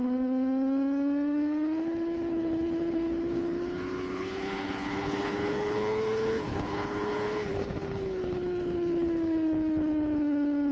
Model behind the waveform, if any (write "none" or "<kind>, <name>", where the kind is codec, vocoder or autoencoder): codec, HILCodec